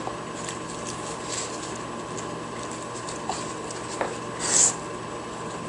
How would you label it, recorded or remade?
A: recorded